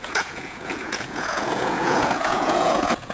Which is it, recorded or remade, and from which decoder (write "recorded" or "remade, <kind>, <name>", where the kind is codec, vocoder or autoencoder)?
remade, vocoder, Vocos